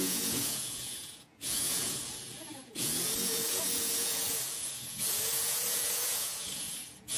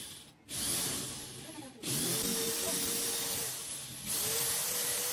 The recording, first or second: second